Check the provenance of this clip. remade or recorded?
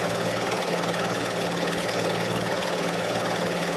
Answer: remade